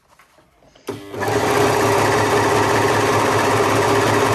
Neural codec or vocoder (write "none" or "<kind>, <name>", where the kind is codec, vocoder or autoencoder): none